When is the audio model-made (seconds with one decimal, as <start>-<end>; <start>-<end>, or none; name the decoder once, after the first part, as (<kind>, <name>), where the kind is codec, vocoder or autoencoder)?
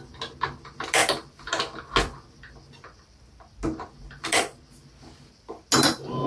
none